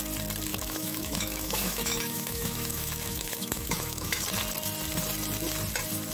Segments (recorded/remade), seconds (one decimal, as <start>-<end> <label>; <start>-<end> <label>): 0.0-0.5 recorded; 0.5-4.2 remade; 4.2-6.1 recorded